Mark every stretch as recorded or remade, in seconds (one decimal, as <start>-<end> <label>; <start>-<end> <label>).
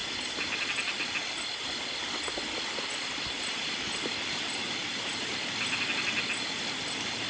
0.0-7.3 recorded